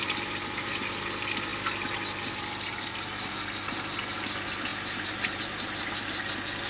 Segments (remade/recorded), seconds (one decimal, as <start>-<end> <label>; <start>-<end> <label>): 0.0-4.7 recorded; 4.7-6.2 remade; 6.2-6.7 recorded